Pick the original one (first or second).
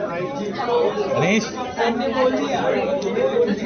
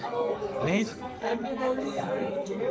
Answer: first